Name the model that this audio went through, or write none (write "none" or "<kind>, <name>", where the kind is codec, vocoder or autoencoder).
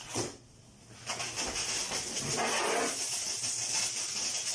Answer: none